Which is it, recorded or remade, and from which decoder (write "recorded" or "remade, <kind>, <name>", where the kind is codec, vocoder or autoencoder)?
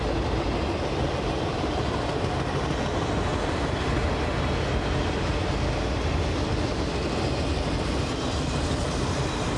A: recorded